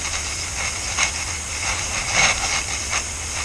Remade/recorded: recorded